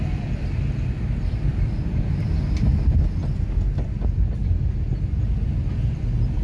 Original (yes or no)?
yes